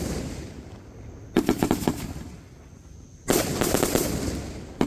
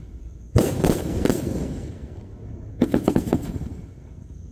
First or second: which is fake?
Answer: second